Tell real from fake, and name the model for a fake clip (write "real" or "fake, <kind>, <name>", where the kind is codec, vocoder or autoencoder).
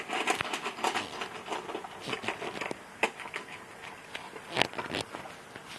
real